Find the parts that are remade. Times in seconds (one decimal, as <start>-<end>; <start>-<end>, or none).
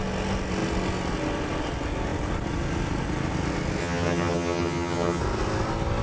3.8-5.2